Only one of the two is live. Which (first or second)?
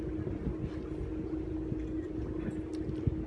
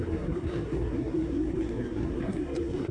first